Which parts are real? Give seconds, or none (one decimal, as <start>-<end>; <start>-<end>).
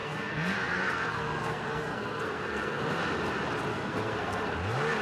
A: 3.0-3.7; 4.5-5.0